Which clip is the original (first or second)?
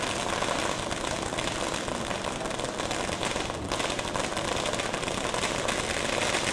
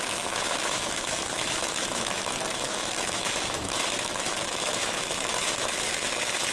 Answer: first